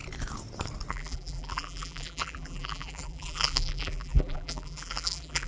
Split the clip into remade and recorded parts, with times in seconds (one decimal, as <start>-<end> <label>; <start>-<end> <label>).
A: 0.0-0.9 recorded; 0.9-5.5 remade